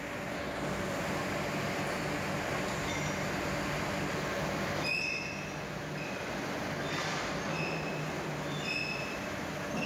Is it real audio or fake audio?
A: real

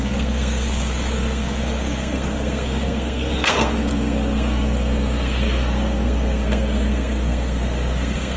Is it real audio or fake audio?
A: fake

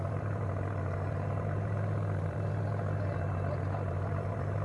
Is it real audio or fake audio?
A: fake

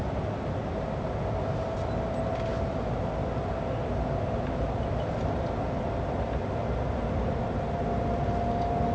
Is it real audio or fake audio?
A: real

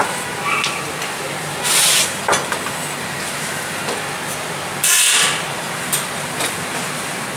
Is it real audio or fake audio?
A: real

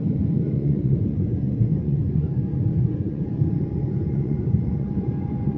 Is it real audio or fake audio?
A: fake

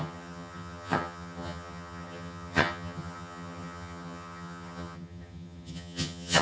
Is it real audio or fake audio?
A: fake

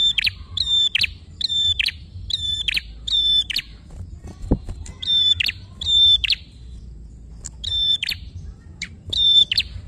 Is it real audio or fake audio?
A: fake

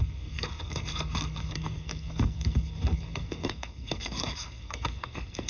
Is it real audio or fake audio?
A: fake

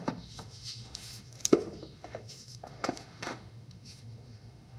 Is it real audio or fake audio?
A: fake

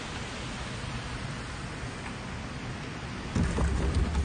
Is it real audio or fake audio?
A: real